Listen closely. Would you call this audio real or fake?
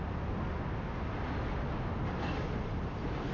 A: real